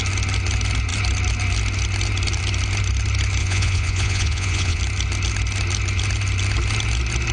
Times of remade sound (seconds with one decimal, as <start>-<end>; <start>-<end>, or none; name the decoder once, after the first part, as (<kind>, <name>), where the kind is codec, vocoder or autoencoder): 3.4-4.8 (vocoder, Vocos)

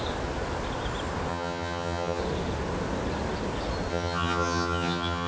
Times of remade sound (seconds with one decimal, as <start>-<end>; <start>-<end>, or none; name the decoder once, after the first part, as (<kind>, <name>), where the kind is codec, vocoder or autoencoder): 1.3-2.2 (vocoder, HiFi-GAN); 3.9-5.3